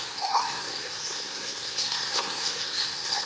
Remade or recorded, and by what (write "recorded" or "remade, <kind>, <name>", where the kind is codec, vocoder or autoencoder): remade, codec, SNAC